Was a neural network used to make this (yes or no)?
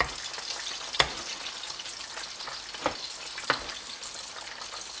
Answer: no